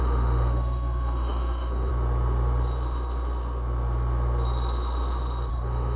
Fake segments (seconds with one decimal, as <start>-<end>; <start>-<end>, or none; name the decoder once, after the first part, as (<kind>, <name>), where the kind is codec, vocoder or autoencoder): 0.0-1.9 (autoencoder, DAC-VAE); 5.5-6.0